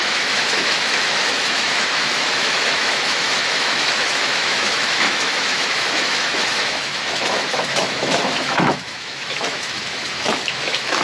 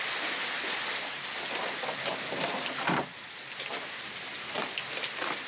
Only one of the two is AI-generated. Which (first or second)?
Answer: first